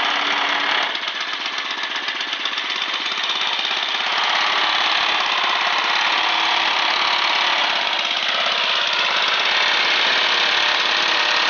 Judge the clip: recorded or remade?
recorded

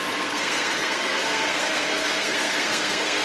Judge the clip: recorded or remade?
remade